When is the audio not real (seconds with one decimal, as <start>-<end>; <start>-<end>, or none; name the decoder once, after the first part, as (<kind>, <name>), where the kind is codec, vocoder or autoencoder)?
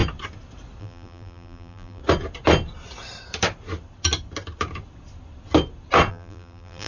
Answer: 0.8-2.0 (vocoder, BigVGAN v2); 6.1-6.9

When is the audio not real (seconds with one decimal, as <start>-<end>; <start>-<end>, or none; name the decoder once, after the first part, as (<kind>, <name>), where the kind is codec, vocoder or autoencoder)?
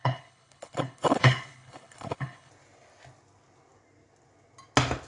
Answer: 0.0-2.5 (codec, HILCodec)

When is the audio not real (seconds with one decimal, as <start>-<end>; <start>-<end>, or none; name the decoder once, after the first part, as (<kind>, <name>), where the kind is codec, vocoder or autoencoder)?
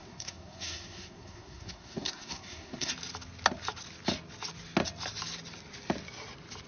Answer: 0.0-2.9 (codec, SNAC)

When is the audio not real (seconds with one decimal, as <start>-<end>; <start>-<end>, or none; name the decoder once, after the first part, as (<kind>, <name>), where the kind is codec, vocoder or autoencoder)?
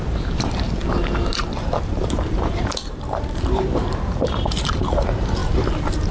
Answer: 0.0-0.8 (vocoder, BigVGAN v2); 1.4-6.1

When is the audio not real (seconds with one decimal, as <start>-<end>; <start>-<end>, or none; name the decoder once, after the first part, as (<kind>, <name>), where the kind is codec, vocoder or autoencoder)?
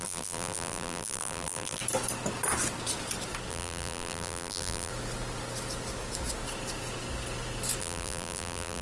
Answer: 0.0-1.8 (vocoder, BigVGAN v2); 3.5-4.9; 7.8-8.8